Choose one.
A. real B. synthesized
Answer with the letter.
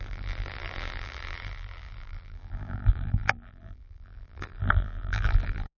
B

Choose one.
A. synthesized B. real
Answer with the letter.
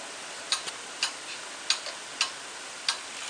B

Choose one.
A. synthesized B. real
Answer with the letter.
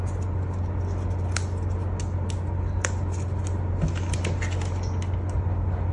B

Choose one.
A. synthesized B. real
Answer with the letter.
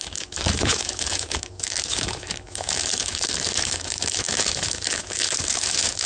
A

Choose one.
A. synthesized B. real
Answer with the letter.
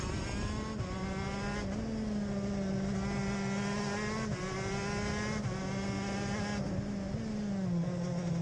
B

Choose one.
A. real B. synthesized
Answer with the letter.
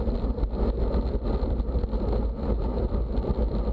A